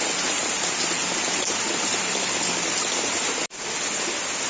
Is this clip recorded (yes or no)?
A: yes